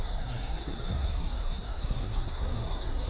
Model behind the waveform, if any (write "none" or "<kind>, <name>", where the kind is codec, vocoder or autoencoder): codec, SNAC